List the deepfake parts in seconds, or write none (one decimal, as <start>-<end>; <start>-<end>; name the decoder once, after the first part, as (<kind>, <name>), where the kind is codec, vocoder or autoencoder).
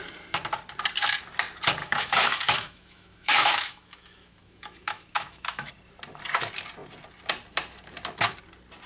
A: 1.8-5.7 (autoencoder, DAC-VAE)